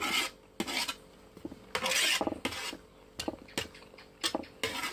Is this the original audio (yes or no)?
yes